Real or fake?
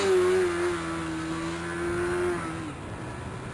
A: real